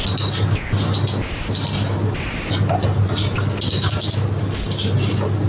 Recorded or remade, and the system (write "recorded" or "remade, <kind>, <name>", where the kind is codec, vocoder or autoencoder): recorded